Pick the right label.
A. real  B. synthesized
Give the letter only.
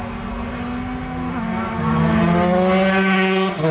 A